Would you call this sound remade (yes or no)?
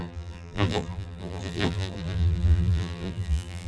yes